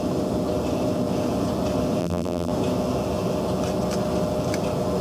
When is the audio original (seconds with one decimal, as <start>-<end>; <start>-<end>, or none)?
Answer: 0.0-2.0; 2.5-5.0